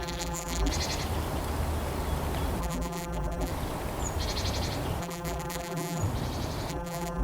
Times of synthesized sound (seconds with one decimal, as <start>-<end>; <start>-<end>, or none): 0.0-0.7; 2.6-3.5; 5.0-6.0; 6.7-7.2